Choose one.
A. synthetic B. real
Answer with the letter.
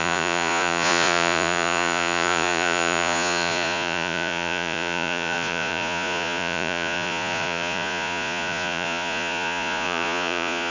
A